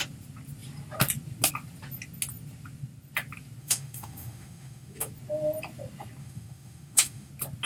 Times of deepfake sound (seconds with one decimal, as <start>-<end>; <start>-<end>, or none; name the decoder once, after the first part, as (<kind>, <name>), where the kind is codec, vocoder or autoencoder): 3.6-5.1 (autoencoder, DAC-VAE); 6.2-7.3